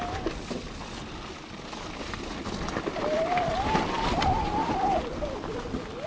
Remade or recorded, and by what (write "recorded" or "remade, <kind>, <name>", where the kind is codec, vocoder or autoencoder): recorded